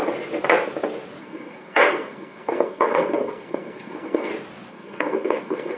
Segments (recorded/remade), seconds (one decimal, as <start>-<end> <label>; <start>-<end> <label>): 0.0-1.2 recorded; 1.2-4.3 remade; 4.3-4.7 recorded; 4.7-5.8 remade

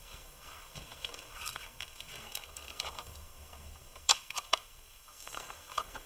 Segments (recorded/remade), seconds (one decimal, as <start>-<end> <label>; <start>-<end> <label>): 0.0-6.1 remade